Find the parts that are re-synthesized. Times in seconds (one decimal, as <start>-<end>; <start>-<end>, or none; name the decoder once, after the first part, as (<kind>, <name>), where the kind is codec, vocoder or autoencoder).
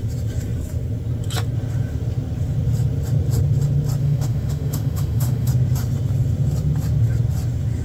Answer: 4.0-5.5 (autoencoder, DAC-VAE)